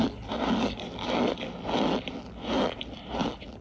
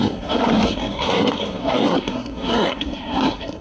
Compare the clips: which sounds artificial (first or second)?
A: second